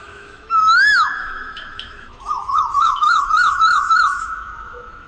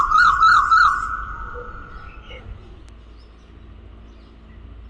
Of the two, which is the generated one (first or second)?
first